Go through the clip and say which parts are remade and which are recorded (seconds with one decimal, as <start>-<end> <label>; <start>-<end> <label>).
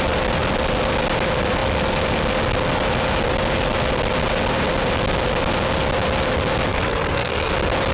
0.0-6.7 recorded; 6.7-7.5 remade; 7.5-7.9 recorded